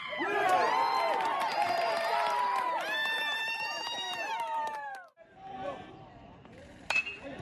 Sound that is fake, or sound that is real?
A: fake